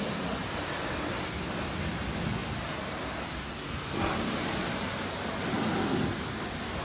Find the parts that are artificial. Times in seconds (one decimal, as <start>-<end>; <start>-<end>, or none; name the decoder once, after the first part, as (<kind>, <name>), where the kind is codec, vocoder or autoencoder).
none